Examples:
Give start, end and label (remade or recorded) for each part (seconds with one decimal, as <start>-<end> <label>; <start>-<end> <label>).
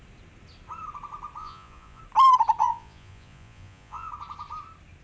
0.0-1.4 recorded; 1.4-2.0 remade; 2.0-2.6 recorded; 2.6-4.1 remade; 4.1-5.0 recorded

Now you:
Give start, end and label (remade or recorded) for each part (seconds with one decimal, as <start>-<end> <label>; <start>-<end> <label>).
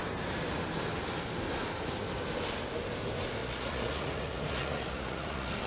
0.0-3.4 recorded; 3.4-5.7 remade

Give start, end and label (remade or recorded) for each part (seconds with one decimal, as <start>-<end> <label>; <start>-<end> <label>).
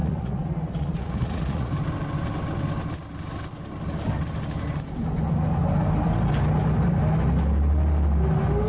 0.0-1.7 remade; 1.7-8.7 recorded